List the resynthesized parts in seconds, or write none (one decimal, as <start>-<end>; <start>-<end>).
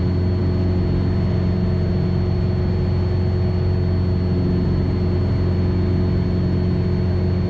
none